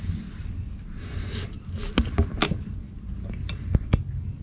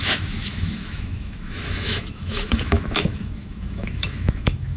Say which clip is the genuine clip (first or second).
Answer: first